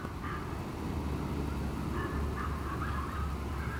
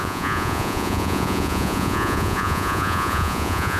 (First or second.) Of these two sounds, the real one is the first